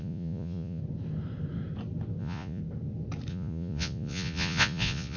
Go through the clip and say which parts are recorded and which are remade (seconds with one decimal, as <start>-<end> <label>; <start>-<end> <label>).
0.0-0.8 remade; 0.8-2.2 recorded; 2.2-2.6 remade; 2.6-3.3 recorded; 3.3-5.2 remade